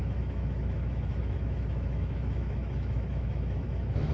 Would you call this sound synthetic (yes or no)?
yes